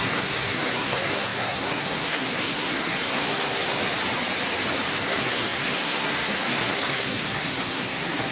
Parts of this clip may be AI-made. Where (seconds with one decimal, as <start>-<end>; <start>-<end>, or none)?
0.0-3.8; 4.9-8.3